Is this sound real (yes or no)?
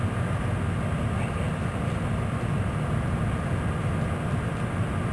yes